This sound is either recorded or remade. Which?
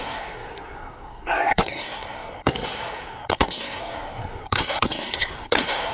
remade